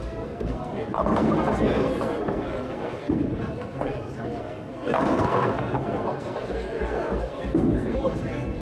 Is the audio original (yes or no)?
no